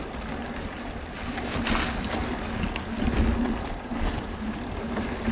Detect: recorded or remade recorded